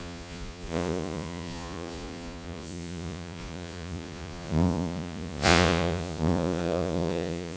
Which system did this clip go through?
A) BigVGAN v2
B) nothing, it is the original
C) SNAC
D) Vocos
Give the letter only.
D